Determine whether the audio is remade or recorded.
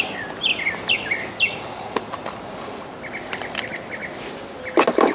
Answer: recorded